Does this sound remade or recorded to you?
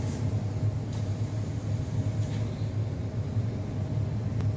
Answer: recorded